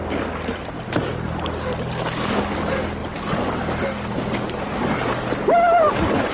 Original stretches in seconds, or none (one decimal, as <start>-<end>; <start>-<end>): 0.0-6.3